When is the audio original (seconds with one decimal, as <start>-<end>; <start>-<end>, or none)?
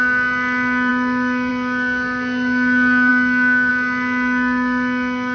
0.0-5.3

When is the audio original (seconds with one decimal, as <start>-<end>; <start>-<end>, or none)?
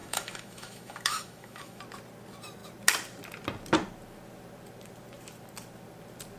1.8-6.4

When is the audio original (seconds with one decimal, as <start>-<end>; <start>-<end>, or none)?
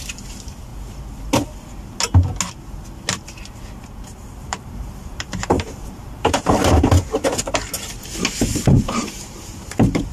0.0-4.4; 6.7-8.5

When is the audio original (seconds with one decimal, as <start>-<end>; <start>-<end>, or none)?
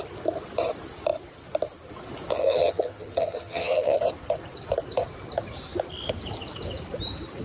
0.0-2.3; 4.0-7.4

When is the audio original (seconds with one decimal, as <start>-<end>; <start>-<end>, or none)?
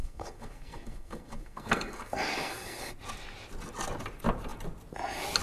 2.9-5.4